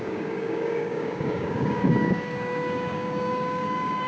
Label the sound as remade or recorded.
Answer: remade